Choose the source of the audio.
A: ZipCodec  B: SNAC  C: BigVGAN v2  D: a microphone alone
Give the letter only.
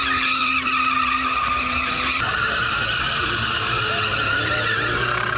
C